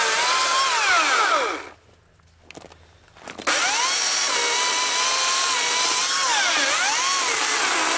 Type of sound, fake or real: real